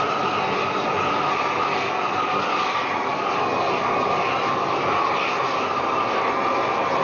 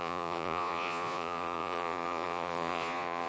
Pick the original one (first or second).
first